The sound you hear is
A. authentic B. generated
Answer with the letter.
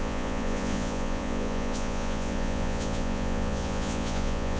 B